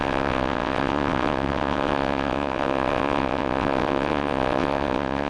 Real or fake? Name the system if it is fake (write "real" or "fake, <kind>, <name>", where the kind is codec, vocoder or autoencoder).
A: fake, vocoder, WaveNeXt